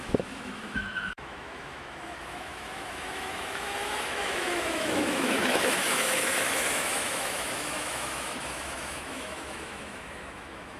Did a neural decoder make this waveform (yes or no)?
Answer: yes